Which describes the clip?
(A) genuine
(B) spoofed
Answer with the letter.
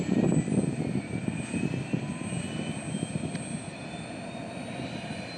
A